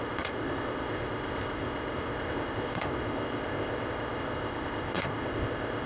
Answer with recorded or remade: remade